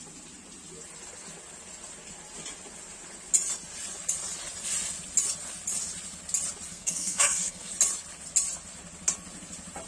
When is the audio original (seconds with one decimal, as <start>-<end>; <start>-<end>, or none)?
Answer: 0.0-6.7; 7.7-9.9